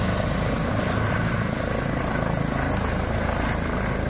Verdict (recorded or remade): recorded